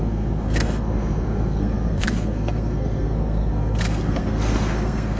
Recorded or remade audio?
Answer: remade